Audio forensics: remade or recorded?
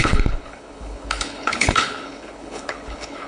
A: remade